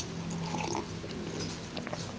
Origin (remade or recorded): recorded